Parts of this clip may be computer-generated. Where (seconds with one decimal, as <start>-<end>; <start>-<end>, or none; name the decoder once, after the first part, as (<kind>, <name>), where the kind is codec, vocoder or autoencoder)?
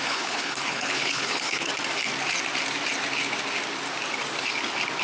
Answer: 0.0-1.7 (codec, HILCodec)